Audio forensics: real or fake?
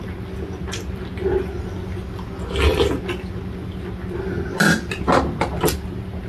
real